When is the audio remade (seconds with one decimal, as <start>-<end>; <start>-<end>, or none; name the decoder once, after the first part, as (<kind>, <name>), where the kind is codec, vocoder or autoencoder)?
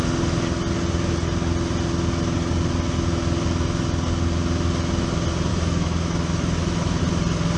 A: 5.5-7.0 (autoencoder, DAC-VAE)